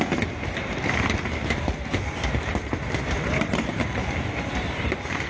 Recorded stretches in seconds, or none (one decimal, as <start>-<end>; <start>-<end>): 0.0-0.6; 3.8-5.3